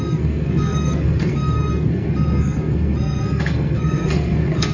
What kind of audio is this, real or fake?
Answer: fake